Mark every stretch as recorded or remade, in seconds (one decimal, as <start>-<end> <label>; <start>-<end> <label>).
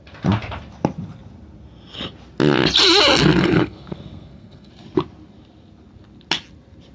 0.0-3.4 recorded; 3.4-4.7 remade; 4.7-6.9 recorded